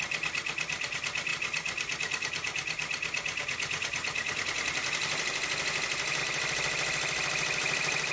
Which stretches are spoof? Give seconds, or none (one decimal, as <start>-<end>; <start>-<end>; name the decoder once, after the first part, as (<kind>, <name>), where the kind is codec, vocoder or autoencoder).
none